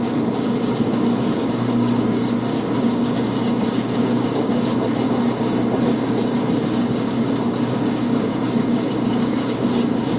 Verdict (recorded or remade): remade